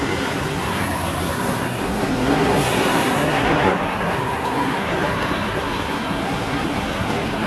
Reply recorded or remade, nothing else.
remade